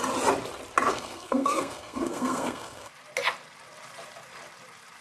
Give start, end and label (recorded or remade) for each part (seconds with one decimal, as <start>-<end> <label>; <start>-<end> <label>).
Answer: 0.0-0.9 recorded; 0.9-2.9 remade; 2.9-5.0 recorded